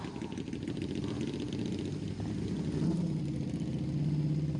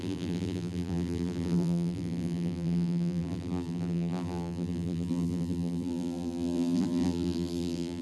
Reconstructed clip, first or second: second